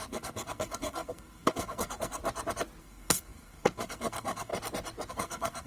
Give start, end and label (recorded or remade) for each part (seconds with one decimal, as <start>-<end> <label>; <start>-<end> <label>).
0.0-2.2 remade; 2.2-2.8 recorded; 2.8-4.5 remade; 4.5-5.1 recorded; 5.1-5.7 remade